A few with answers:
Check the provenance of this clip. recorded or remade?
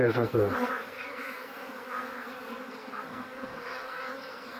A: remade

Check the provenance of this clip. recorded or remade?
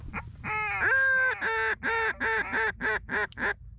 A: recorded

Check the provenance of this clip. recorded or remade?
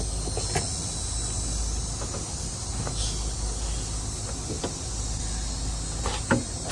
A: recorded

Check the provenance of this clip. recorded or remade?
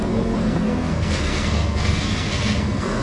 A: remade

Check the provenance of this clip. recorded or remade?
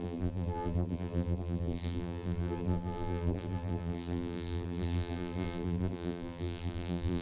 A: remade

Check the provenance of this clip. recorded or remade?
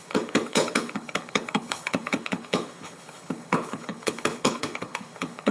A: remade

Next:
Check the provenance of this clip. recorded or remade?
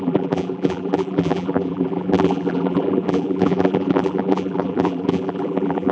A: remade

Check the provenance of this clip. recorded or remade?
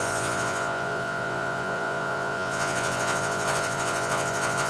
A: remade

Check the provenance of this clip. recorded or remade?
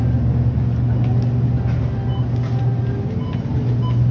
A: recorded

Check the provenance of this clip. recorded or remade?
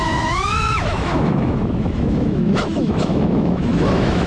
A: remade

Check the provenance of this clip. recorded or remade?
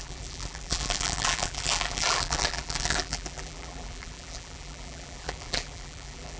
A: remade